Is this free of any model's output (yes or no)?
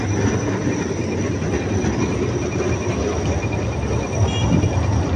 yes